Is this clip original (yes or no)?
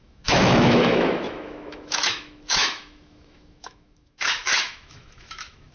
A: no